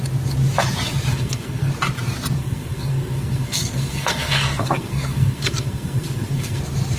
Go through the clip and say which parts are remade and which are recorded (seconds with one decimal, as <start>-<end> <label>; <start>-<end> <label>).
0.0-1.1 recorded; 1.1-1.7 remade; 1.7-2.4 recorded; 2.4-6.6 remade; 6.6-7.0 recorded